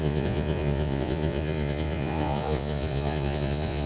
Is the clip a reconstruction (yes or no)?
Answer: yes